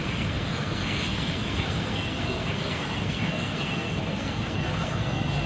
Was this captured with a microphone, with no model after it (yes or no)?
no